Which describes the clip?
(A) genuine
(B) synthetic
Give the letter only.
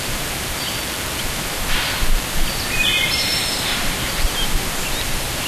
B